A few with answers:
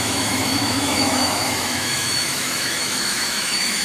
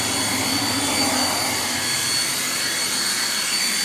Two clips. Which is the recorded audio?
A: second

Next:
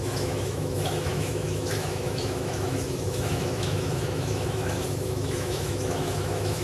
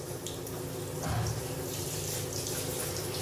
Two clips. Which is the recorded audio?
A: second